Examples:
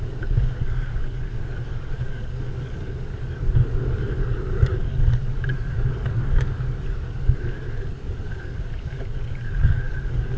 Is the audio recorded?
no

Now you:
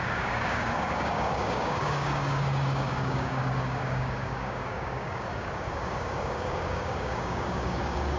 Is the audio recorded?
no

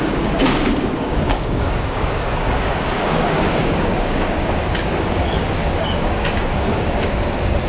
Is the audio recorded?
no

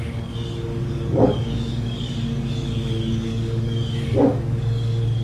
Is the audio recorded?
no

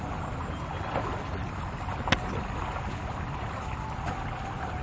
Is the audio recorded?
yes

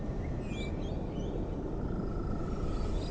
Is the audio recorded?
yes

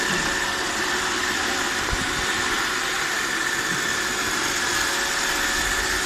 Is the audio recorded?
yes